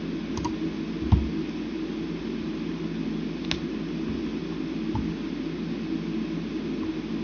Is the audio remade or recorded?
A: recorded